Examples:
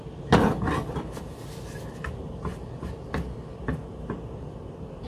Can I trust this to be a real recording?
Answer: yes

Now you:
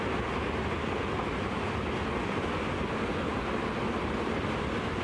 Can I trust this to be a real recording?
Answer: yes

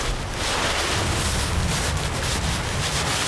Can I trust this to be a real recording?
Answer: yes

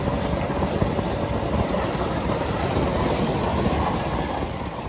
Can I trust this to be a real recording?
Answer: yes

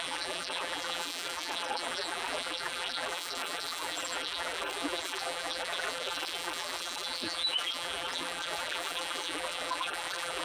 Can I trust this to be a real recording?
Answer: no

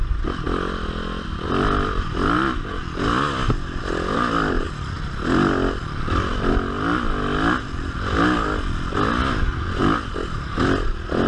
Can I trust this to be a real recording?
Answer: yes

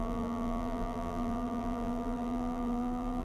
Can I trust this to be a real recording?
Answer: no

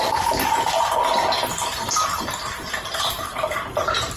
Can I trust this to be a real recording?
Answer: yes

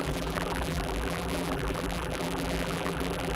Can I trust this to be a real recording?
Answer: no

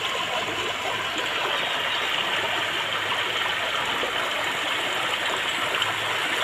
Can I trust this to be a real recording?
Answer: yes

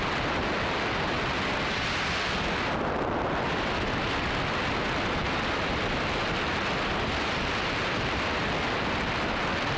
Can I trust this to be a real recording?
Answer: yes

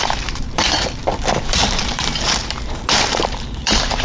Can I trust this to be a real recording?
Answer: no